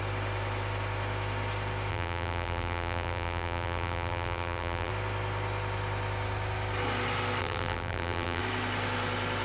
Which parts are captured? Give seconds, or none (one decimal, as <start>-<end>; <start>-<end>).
0.0-1.9; 4.9-7.4; 8.4-9.4

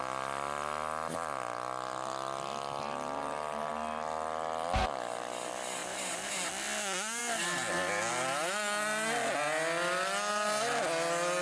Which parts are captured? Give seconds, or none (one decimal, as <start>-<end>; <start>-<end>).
0.0-5.8; 6.5-11.4